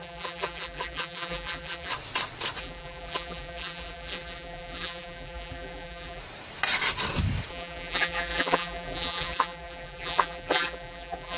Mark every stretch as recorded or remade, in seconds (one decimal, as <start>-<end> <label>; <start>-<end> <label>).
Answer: 0.0-1.9 remade; 1.9-2.6 recorded; 2.6-6.2 remade; 6.2-7.5 recorded; 7.5-11.4 remade